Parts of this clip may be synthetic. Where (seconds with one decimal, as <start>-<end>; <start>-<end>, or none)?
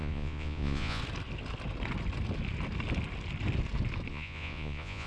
0.0-1.0; 4.1-5.1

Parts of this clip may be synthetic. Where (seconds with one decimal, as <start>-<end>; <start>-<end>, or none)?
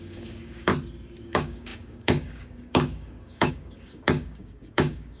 0.0-0.7; 1.2-5.2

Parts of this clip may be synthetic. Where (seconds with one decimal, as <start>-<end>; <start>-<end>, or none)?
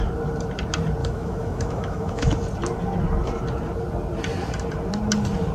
1.0-2.3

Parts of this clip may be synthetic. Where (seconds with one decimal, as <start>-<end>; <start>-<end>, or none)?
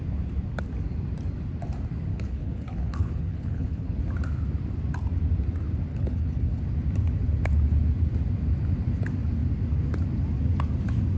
2.1-4.0; 5.9-6.6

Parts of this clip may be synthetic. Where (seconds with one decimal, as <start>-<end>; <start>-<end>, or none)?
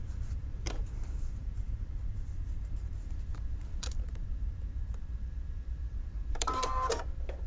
0.0-7.5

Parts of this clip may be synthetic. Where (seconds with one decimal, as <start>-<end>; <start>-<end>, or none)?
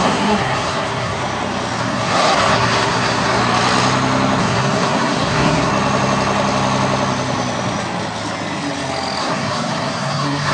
0.0-1.2; 1.8-3.4; 4.4-5.7; 9.2-10.5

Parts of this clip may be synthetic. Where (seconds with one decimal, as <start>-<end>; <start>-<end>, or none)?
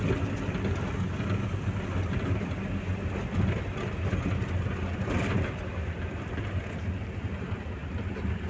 4.9-6.3; 7.8-8.5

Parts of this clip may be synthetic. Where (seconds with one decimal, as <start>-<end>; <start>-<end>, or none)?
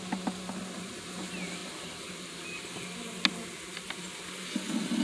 none